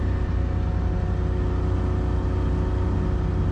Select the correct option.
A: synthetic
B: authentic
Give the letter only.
B